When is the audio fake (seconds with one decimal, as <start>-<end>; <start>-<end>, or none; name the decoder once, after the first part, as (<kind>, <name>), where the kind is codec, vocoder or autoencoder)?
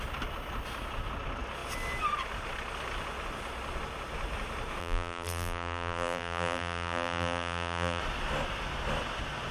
4.8-8.0 (vocoder, BigVGAN v2)